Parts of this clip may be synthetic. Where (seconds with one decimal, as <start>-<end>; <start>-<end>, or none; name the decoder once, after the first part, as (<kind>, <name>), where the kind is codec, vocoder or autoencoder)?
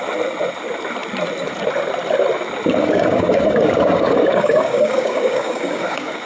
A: 2.8-6.3 (codec, DAC)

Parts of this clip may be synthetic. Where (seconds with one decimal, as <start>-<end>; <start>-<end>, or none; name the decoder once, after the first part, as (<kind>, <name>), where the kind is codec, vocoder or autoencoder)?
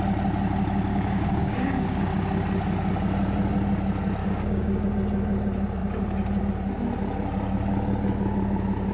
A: 0.9-2.1 (codec, DAC); 4.2-4.9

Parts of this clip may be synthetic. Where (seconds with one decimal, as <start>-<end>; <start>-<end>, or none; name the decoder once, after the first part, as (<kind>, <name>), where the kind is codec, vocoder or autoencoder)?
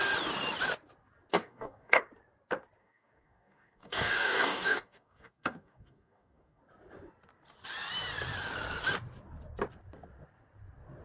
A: 1.3-2.0 (codec, DAC); 2.8-6.6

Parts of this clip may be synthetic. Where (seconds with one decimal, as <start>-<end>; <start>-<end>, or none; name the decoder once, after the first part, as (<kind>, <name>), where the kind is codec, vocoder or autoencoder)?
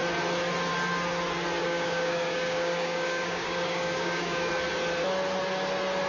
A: 1.6-4.5 (codec, DAC)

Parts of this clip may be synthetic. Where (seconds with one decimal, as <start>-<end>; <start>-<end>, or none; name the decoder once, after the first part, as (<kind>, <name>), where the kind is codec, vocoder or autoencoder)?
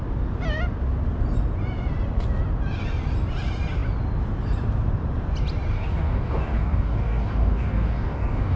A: 5.7-8.6 (codec, DAC)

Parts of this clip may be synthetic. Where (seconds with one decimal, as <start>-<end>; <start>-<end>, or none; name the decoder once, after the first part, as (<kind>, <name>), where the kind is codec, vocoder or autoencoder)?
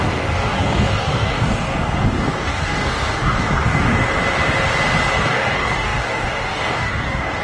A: 0.0-3.9 (codec, DAC); 5.2-7.4